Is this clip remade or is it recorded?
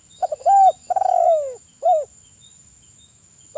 remade